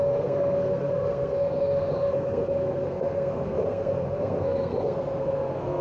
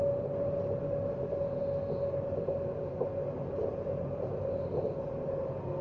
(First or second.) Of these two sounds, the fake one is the first